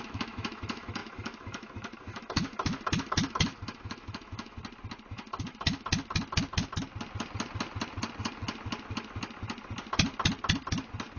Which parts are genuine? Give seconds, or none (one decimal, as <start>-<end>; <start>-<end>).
4.6-5.1; 5.9-11.2